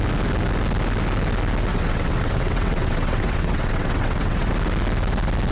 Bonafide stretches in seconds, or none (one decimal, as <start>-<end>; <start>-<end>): 0.0-1.7; 4.5-5.5